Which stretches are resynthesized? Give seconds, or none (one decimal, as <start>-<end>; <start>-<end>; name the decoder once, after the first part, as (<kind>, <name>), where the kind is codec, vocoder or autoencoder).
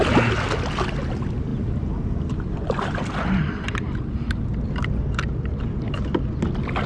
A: none